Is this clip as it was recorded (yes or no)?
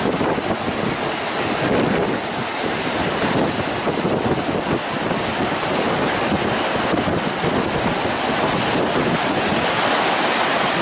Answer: yes